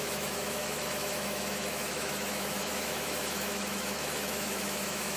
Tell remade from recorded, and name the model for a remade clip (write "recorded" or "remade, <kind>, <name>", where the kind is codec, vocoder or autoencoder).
remade, autoencoder, DAC-VAE